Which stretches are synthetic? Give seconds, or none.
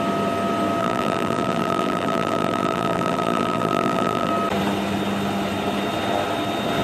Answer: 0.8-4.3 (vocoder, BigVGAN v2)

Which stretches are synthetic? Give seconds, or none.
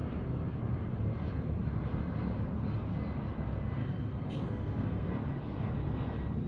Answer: 3.8-5.1 (codec, SNAC)